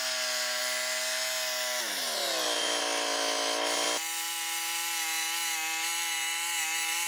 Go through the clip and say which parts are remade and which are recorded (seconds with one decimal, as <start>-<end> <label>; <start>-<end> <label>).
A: 0.0-7.1 recorded